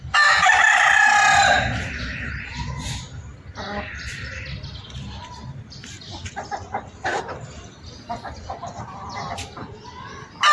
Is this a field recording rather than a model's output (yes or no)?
yes